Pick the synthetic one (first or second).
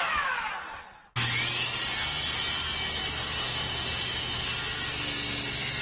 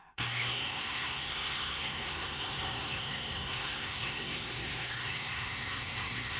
second